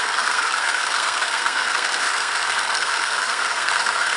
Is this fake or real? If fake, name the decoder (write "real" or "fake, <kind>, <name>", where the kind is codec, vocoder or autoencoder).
fake, codec, SNAC